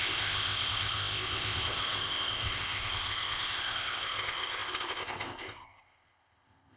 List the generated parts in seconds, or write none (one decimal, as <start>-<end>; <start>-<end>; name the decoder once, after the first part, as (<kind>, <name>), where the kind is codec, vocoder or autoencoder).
0.0-6.8 (codec, ZipCodec)